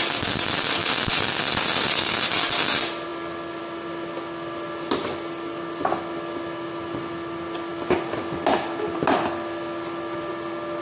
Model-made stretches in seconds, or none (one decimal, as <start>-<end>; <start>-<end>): none